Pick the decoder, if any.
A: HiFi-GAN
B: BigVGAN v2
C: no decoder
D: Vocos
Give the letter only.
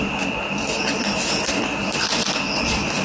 C